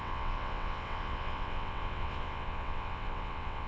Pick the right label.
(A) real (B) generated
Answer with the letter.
B